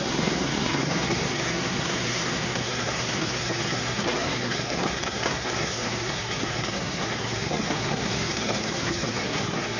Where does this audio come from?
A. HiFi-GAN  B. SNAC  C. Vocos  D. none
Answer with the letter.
B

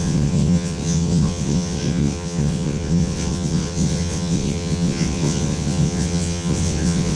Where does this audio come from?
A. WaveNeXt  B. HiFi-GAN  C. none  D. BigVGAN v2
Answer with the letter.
A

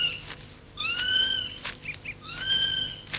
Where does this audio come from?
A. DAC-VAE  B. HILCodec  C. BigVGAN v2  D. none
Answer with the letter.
D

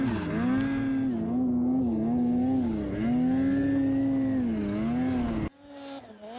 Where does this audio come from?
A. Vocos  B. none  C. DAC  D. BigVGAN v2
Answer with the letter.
B